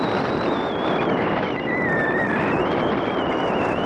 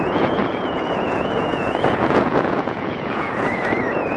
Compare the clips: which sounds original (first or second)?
first